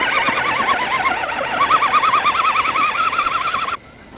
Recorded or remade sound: recorded